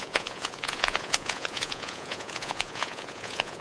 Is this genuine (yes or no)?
no